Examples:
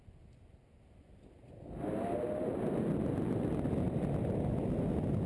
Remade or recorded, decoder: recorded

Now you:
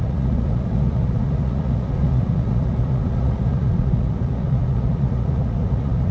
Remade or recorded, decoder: remade, vocoder, Vocos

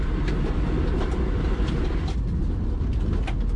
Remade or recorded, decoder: recorded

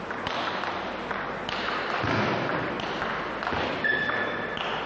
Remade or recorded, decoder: recorded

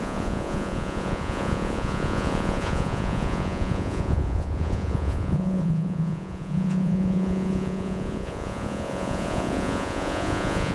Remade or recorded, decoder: remade, vocoder, Vocos